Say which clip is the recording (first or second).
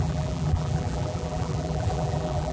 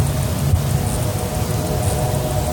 second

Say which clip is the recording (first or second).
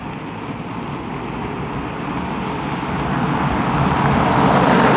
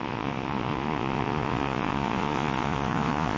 first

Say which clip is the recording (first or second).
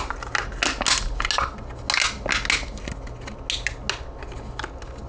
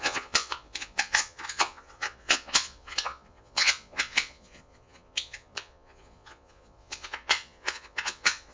first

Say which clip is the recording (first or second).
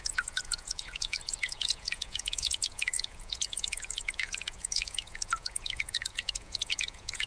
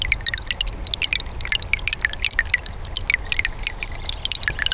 second